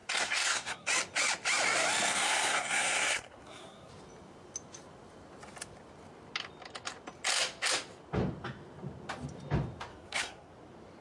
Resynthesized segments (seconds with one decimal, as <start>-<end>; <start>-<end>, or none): 0.0-0.9; 2.1-3.9; 9.9-10.5